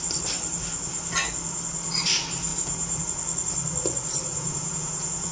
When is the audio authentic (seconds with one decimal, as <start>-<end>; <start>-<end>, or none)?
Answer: 0.0-2.5; 3.0-4.3